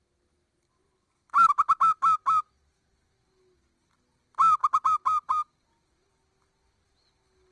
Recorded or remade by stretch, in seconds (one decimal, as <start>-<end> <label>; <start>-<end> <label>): 0.0-7.5 recorded